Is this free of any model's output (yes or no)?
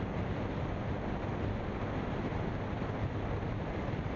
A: yes